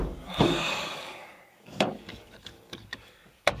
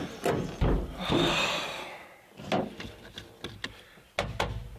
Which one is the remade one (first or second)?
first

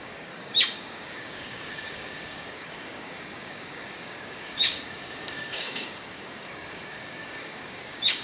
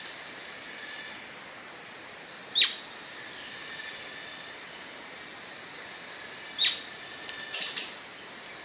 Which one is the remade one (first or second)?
first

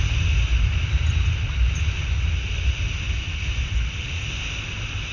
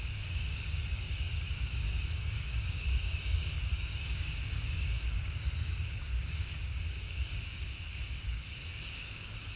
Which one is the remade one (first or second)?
second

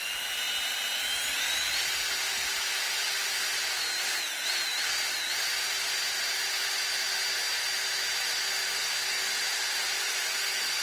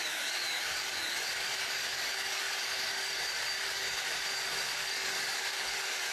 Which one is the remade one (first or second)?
second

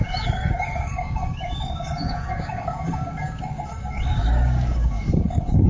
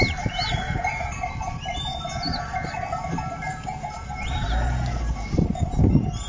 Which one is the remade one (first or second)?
first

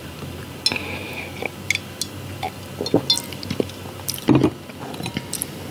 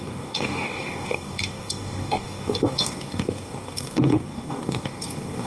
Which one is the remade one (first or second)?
second